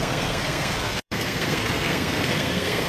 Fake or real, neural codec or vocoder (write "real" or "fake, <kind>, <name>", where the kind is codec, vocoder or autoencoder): fake, codec, SNAC